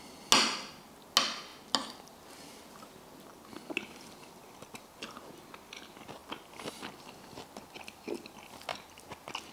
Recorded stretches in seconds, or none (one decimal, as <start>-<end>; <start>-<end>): 0.0-9.5

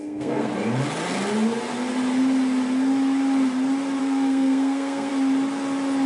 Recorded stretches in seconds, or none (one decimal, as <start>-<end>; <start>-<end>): 0.5-4.0; 5.1-6.1

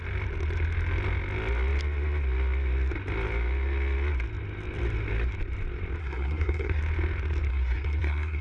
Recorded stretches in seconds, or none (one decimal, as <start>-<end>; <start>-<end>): 0.0-6.0; 6.8-7.5

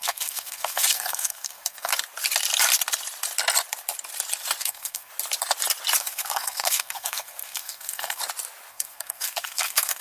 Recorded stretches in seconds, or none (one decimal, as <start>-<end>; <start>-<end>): 1.9-4.6; 5.1-6.0; 8.2-8.7